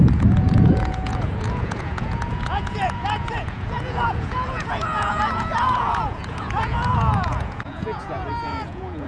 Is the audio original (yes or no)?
no